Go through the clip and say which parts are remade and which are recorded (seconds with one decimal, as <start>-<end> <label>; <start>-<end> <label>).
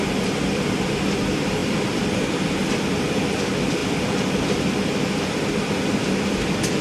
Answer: 0.0-6.8 recorded